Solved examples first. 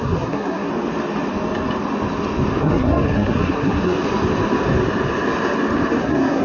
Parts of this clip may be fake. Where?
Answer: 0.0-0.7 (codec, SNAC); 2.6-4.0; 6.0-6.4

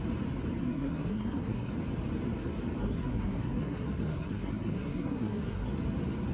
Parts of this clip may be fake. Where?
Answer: 0.6-1.7 (codec, SNAC); 2.8-5.7

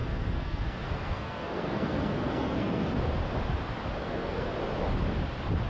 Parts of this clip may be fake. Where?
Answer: 0.0-2.9 (codec, SNAC); 4.0-4.5